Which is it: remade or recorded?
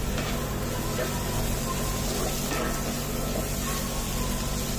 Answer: recorded